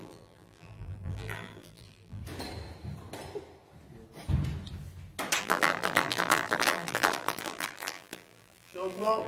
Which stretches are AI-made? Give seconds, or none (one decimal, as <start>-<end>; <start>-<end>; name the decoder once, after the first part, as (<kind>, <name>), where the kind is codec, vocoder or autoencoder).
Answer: 0.0-2.2 (vocoder, BigVGAN v2); 5.4-9.3